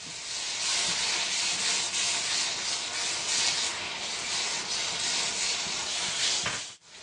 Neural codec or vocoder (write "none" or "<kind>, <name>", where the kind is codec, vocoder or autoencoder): none